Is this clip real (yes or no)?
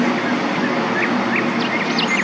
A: yes